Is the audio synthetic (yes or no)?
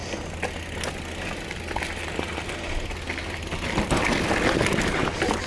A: no